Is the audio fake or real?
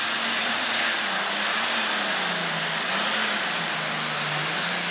real